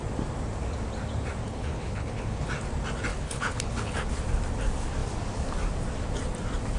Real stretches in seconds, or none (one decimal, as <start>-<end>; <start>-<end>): 0.0-1.4; 2.5-3.1; 4.1-6.8

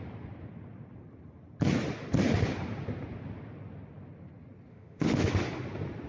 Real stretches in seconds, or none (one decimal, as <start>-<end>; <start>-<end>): 0.0-4.7; 5.3-6.1

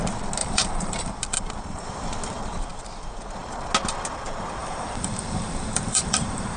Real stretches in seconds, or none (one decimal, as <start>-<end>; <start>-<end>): 0.0-0.4; 1.1-4.6

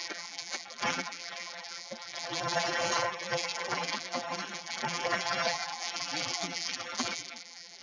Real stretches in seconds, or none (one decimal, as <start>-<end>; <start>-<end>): none